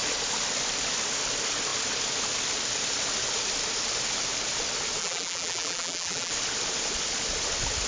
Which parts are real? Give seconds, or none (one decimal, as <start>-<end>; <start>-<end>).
0.0-5.0; 6.3-7.9